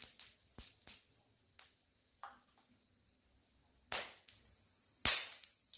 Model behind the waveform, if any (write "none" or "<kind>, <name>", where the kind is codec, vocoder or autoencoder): none